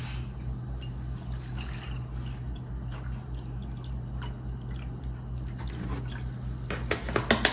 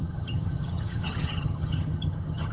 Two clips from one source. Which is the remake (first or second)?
second